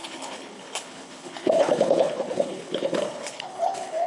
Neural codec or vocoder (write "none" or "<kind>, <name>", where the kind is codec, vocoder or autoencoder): codec, HILCodec